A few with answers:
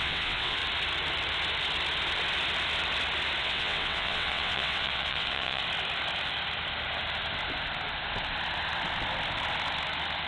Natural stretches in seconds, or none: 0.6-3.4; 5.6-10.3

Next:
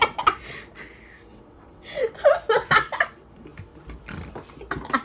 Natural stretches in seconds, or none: 0.0-1.3; 2.0-5.0

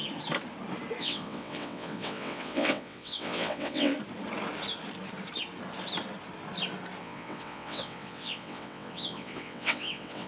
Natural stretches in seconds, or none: 0.0-1.0; 3.9-7.0

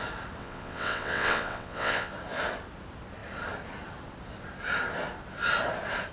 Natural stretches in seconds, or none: 0.0-0.4; 2.1-6.1